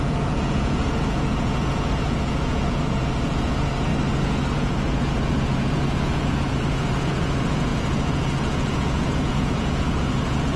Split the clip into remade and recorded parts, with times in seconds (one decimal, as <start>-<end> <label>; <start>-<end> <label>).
0.0-3.9 remade; 3.9-4.5 recorded; 4.5-10.6 remade